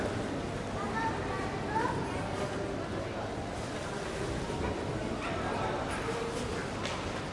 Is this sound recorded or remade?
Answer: recorded